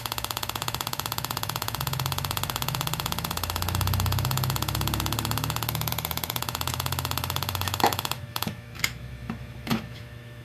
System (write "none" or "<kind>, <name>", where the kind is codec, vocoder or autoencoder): autoencoder, DAC-VAE